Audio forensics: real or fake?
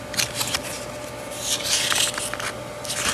real